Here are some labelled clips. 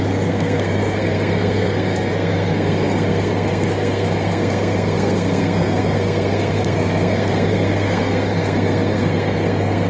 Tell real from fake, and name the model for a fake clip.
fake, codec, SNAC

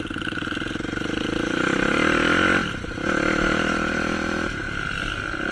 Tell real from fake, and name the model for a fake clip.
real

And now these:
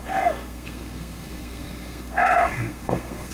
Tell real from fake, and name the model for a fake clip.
fake, codec, SNAC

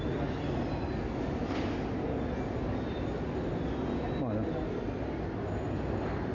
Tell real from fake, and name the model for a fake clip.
real